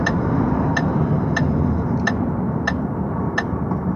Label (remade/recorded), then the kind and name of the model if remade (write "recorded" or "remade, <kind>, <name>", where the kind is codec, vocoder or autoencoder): recorded